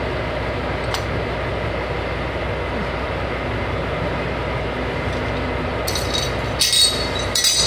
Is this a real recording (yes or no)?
yes